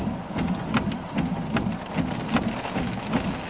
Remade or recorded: recorded